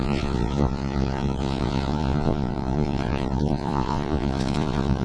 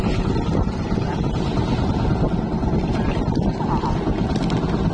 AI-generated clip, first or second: first